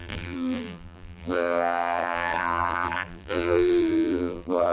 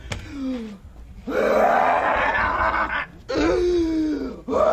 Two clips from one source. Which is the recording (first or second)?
second